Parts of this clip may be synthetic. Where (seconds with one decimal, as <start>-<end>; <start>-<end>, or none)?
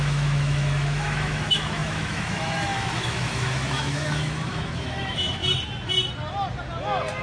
0.0-5.4